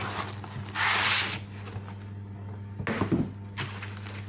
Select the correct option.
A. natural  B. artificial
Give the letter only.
A